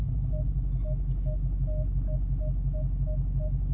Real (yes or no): yes